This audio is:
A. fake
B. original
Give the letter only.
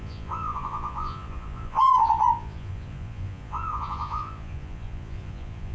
A